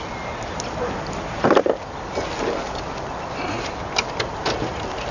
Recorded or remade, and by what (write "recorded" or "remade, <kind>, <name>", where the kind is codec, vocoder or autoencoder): recorded